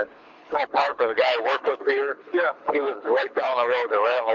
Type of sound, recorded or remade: remade